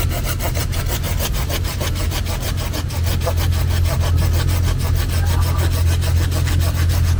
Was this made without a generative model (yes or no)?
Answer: yes